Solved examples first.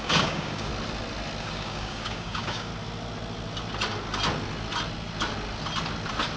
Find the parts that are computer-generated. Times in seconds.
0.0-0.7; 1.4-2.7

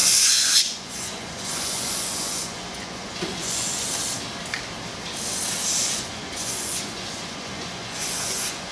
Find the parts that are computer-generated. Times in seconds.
0.0-3.9; 5.8-8.7

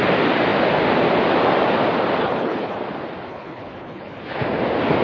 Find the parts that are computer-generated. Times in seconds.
2.2-2.8; 3.3-4.2